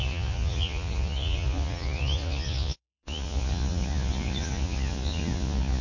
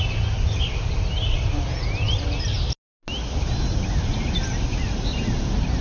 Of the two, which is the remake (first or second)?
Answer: first